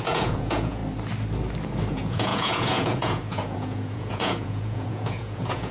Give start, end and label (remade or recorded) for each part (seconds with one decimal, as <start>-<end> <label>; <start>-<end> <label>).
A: 0.0-0.8 remade; 0.8-1.9 recorded; 1.9-5.7 remade